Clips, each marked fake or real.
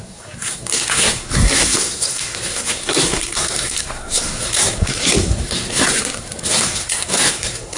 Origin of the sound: fake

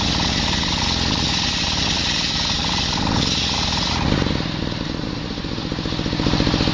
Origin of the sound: real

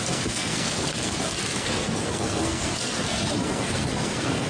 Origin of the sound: fake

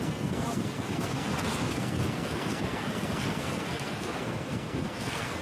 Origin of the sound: fake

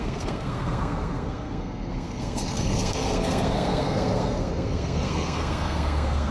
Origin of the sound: fake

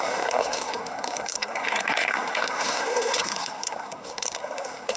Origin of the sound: fake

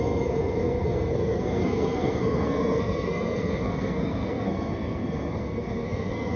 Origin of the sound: fake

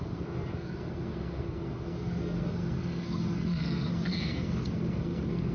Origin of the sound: fake